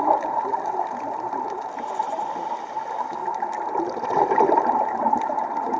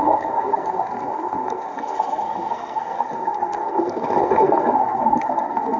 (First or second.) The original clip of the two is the first